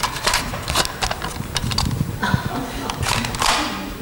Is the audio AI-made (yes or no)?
no